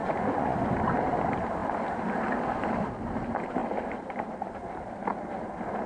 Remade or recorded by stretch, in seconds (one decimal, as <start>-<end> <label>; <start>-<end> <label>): 0.0-0.8 remade; 0.8-5.9 recorded